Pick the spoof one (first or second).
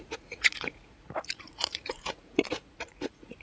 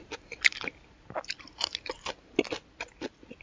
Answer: first